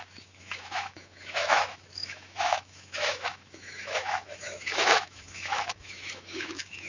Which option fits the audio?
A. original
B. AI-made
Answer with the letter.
B